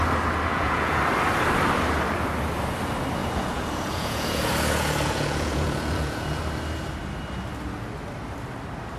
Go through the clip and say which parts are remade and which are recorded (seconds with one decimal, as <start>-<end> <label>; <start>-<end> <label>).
0.0-0.5 recorded; 0.5-1.0 remade; 1.0-3.2 recorded; 3.2-6.4 remade; 6.4-9.0 recorded